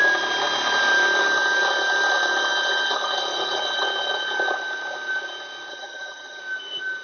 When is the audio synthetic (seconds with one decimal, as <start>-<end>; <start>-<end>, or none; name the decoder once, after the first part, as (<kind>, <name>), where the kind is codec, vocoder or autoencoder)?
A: 5.7-6.4 (vocoder, HiFi-GAN)